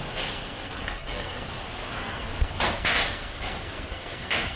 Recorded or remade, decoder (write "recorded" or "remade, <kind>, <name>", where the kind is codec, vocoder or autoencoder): remade, codec, SNAC